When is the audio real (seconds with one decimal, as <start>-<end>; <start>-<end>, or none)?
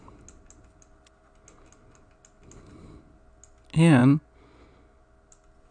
0.0-5.7